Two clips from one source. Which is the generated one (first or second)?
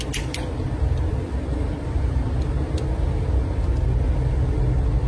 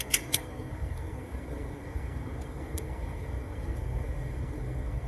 second